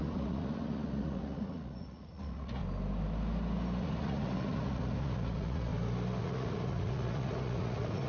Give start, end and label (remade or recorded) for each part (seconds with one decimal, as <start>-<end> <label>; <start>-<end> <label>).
0.0-2.6 remade; 2.6-3.8 recorded; 3.8-5.7 remade; 5.7-6.2 recorded; 6.2-8.1 remade